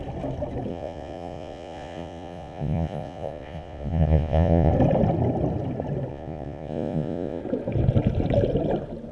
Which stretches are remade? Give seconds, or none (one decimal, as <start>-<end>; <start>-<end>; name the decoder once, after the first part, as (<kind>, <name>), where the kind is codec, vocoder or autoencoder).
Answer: 0.7-4.7 (vocoder, Vocos); 6.1-7.4